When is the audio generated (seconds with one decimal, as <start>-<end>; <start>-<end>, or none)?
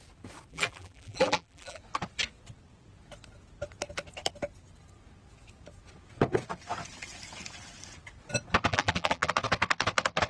0.5-1.8; 8.7-9.3